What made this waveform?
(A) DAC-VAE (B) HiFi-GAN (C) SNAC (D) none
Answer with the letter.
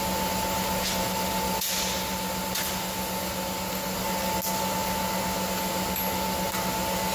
D